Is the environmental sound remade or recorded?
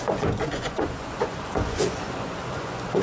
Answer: remade